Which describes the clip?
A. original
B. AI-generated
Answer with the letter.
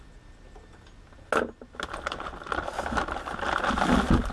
A